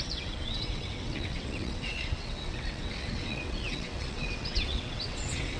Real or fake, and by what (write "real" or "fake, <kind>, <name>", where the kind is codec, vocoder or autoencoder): fake, vocoder, WaveNeXt